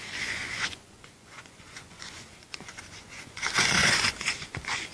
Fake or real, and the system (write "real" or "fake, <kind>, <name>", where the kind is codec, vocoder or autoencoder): fake, vocoder, Vocos